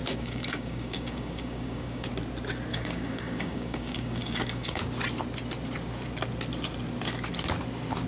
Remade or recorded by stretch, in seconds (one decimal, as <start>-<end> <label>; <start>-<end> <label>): 0.0-2.1 remade; 2.1-2.7 recorded; 2.7-4.8 remade; 4.8-8.1 recorded